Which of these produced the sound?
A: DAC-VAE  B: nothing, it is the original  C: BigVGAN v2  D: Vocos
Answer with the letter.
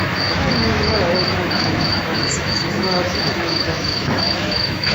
A